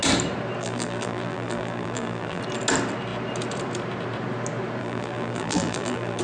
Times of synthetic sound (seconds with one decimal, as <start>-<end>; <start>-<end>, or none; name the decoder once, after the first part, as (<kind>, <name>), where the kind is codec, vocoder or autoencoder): 0.6-2.4 (vocoder, BigVGAN v2); 4.8-6.2